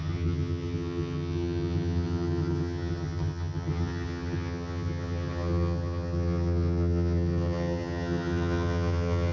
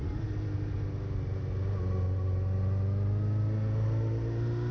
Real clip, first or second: second